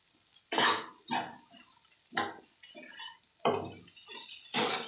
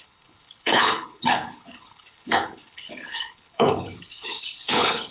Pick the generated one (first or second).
second